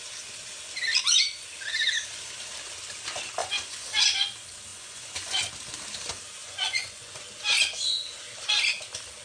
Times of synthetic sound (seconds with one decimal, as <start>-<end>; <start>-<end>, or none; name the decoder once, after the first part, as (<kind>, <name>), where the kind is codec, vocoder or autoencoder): 3.4-4.0 (vocoder, Vocos); 4.7-5.5; 6.4-7.2